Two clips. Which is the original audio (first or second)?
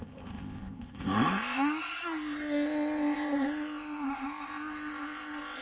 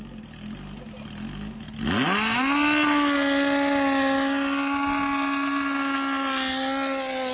second